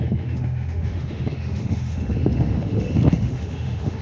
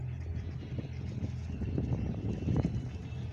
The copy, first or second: first